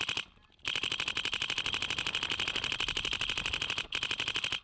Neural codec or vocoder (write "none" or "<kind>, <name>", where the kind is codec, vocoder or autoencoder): none